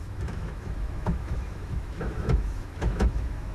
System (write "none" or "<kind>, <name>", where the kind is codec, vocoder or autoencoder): autoencoder, DAC-VAE